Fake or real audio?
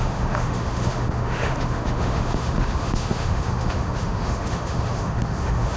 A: fake